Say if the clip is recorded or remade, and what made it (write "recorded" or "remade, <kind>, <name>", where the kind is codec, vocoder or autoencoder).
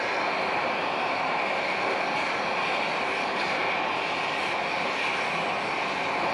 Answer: recorded